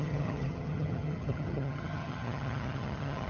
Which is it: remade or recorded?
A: remade